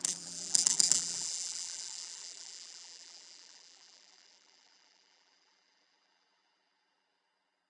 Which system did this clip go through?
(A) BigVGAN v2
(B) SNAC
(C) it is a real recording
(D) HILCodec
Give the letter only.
A